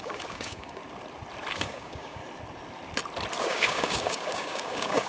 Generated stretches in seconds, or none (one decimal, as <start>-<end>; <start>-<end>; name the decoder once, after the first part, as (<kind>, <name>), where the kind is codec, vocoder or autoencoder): 0.0-0.8 (codec, DAC); 1.5-2.2; 3.4-5.1